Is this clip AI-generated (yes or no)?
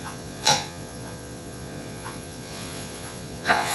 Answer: yes